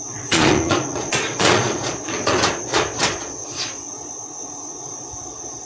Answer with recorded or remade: remade